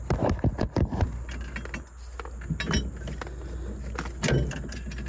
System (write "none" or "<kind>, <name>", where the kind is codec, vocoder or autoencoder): none